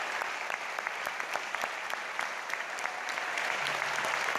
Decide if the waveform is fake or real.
real